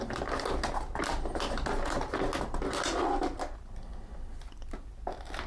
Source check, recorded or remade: recorded